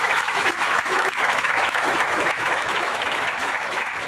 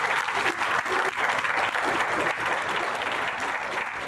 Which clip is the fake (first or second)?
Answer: first